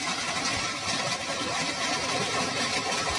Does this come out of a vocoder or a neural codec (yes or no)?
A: no